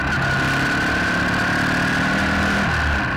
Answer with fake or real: real